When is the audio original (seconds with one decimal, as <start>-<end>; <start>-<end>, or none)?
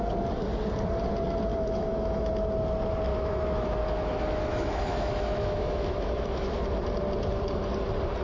0.0-1.5; 2.2-3.1; 6.6-8.2